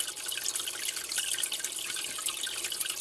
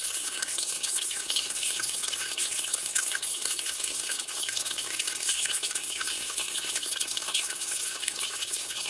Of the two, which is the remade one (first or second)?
second